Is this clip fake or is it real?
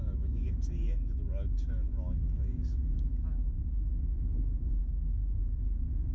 fake